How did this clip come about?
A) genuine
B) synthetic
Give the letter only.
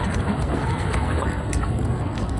B